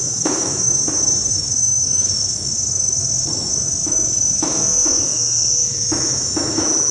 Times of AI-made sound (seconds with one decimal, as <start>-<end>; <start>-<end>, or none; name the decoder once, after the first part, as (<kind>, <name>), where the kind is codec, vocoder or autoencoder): 0.0-0.7 (autoencoder, DAC-VAE); 1.3-6.9